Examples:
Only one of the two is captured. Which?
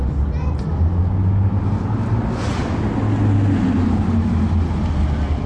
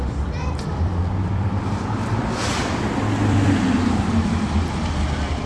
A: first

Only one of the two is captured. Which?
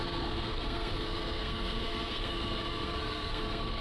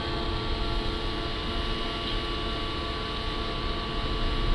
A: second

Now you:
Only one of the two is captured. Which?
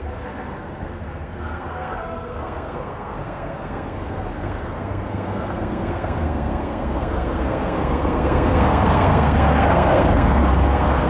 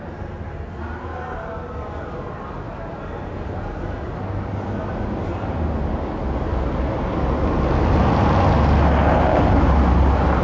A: second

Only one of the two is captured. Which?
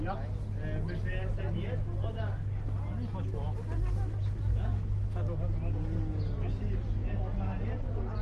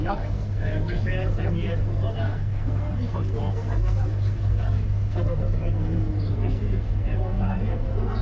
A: first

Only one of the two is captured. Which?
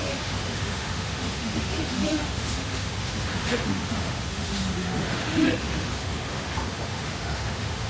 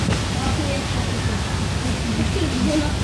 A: second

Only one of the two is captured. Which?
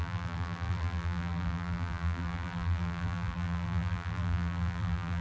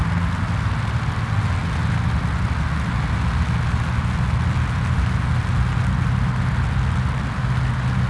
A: second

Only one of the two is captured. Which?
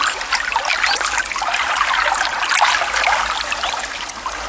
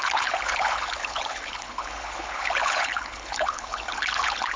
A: first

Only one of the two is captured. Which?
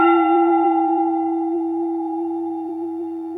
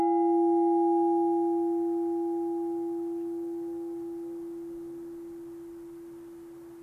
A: second